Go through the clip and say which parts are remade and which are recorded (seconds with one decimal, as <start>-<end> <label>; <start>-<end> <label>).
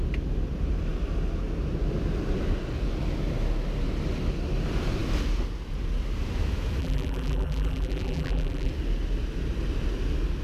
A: 0.0-6.8 recorded; 6.8-8.7 remade; 8.7-10.4 recorded